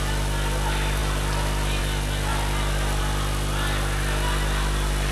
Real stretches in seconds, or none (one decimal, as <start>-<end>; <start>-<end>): 0.0-5.1